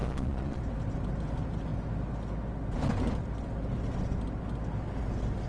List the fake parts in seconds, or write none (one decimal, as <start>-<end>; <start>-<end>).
0.0-0.6

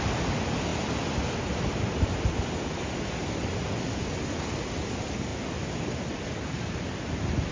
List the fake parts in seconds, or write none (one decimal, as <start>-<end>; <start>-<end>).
none

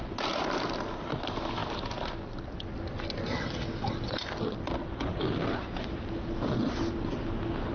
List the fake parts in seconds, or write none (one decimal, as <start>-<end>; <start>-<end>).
none

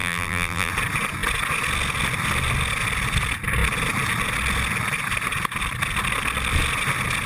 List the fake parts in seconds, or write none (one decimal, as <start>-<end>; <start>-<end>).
0.0-0.7